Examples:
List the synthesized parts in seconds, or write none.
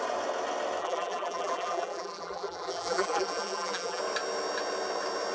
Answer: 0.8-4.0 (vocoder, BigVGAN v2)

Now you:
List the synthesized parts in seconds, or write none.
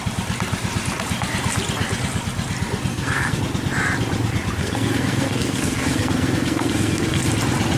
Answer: 2.9-3.4 (codec, SNAC); 4.6-7.3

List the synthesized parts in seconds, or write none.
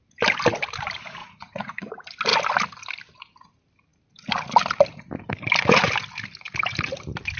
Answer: 1.2-1.9 (vocoder, Vocos)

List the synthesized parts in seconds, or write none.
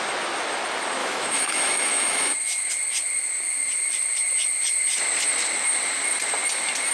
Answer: 1.0-2.7 (autoencoder, DAC-VAE)